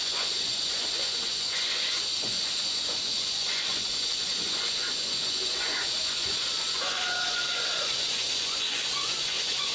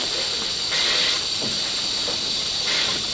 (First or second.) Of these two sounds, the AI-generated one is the first